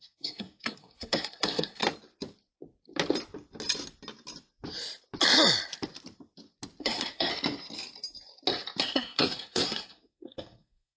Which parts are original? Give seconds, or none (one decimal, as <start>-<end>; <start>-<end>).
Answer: 1.8-6.8; 7.3-8.8